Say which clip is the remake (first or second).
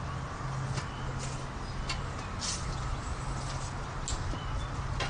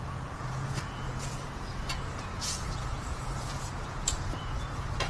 second